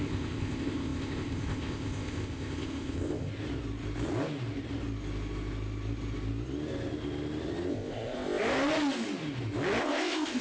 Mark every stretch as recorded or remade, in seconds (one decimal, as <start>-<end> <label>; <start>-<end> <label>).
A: 0.0-3.3 remade; 3.3-7.7 recorded; 7.7-8.4 remade; 8.4-9.8 recorded; 9.8-10.4 remade